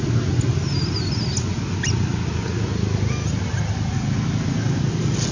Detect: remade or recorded recorded